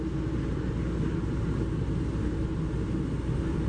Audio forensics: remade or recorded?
recorded